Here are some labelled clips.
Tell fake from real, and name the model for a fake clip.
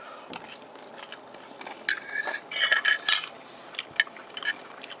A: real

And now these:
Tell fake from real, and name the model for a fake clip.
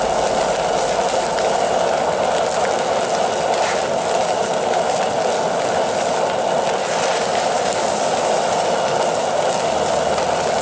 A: real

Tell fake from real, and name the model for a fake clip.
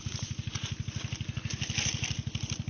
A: real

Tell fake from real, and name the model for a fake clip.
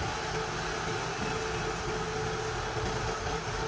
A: real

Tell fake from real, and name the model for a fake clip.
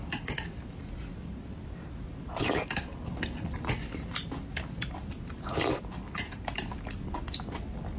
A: real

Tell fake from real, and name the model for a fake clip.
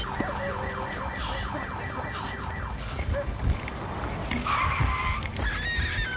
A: real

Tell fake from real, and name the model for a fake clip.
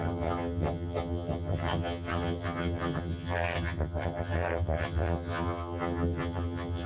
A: fake, vocoder, HiFi-GAN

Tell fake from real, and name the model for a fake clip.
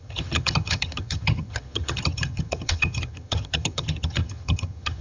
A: fake, vocoder, HiFi-GAN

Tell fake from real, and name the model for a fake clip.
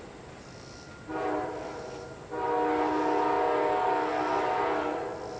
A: real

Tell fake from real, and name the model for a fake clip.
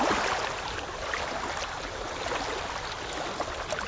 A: real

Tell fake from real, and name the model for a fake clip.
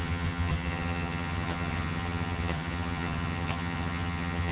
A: fake, vocoder, HiFi-GAN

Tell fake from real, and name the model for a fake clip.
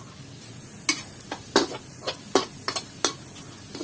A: real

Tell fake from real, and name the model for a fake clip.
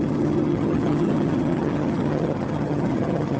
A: fake, vocoder, HiFi-GAN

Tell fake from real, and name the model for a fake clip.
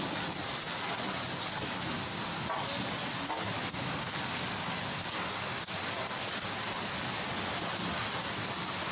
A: real